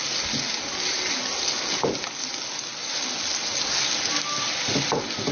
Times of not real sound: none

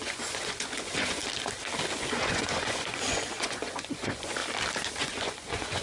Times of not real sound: 0.0-1.2 (vocoder, Vocos); 1.9-4.4; 5.0-5.8

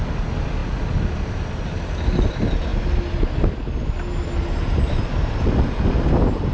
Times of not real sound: none

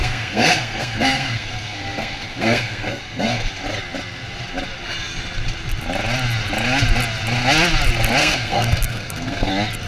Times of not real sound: 0.0-3.5 (codec, SNAC); 8.2-9.5

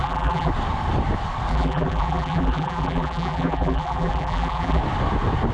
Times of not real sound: 0.0-0.5 (vocoder, BigVGAN v2); 1.5-4.8

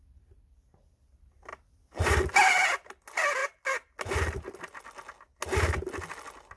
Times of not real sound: none

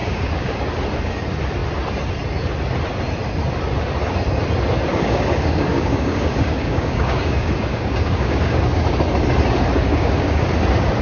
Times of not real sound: 0.0-0.6 (codec, DAC); 4.9-8.6; 9.9-10.5

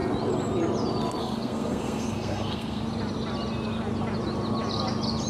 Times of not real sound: 1.2-2.8 (codec, SNAC)